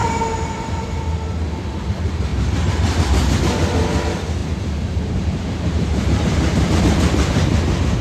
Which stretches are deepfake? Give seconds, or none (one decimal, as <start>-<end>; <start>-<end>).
0.0-1.0; 4.4-6.8